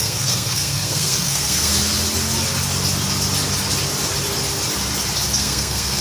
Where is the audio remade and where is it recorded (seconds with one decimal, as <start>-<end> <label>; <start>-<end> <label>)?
0.0-1.7 remade; 1.7-5.3 recorded; 5.3-6.0 remade